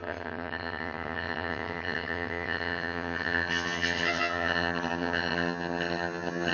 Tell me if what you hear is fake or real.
fake